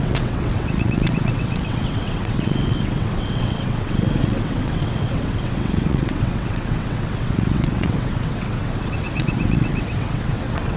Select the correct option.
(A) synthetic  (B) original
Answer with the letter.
A